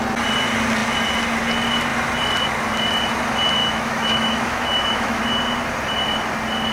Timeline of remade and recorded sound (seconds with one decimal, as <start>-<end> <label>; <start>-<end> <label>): 0.0-3.6 recorded; 3.6-5.2 remade; 5.2-6.7 recorded